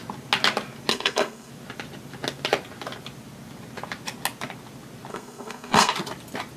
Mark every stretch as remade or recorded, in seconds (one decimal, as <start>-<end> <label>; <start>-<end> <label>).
0.0-0.9 recorded; 0.9-1.5 remade; 1.5-5.1 recorded; 5.1-5.9 remade; 5.9-6.6 recorded